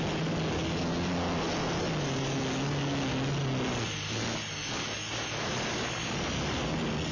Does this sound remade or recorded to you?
recorded